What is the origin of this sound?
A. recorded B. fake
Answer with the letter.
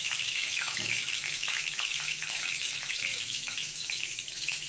B